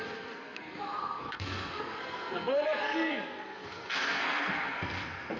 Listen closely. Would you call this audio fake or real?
fake